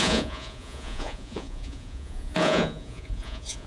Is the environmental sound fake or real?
fake